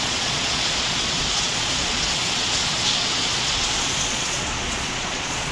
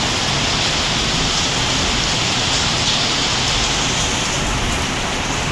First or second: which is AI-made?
first